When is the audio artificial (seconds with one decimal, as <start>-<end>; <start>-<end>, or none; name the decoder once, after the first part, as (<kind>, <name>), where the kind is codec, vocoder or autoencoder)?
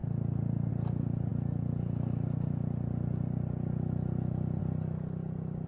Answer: none